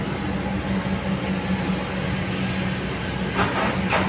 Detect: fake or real real